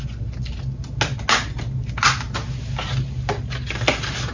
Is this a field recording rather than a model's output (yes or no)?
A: yes